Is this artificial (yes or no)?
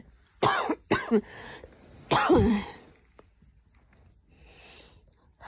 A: no